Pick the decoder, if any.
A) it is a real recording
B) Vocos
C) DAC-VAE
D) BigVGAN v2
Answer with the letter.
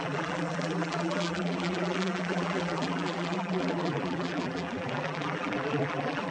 D